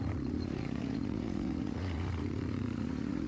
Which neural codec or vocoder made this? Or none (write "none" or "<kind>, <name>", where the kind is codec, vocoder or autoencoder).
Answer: vocoder, Vocos